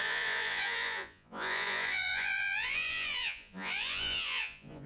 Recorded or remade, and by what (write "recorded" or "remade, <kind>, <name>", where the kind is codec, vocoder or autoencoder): remade, vocoder, Vocos